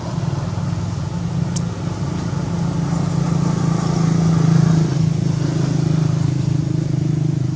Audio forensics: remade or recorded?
recorded